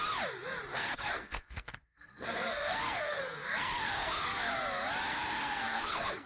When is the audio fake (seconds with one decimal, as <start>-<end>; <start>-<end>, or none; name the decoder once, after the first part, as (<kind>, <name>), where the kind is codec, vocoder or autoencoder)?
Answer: 0.7-4.5 (codec, SNAC); 5.1-6.3